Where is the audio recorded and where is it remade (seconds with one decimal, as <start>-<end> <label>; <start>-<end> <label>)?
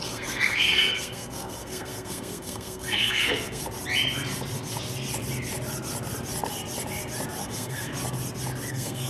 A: 0.0-3.6 remade; 3.6-7.4 recorded; 7.4-7.9 remade; 7.9-8.7 recorded; 8.7-9.1 remade